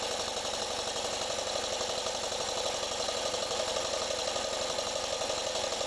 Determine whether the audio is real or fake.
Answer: real